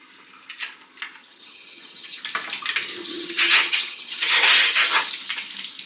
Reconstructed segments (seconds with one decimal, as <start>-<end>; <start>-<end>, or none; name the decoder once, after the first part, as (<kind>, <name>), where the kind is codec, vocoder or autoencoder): 1.2-2.2 (vocoder, HiFi-GAN); 3.0-5.1